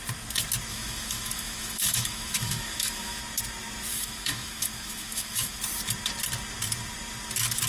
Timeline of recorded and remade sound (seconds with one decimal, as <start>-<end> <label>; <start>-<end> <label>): 0.0-0.7 recorded; 0.7-3.2 remade; 3.2-3.9 recorded; 3.9-5.6 remade; 5.6-7.7 recorded